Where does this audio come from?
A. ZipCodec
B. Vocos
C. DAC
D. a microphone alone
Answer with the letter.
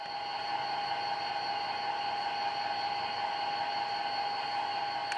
D